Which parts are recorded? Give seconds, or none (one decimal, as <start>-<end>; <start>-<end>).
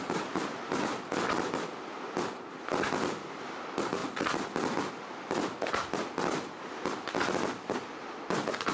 0.9-3.4; 4.0-8.7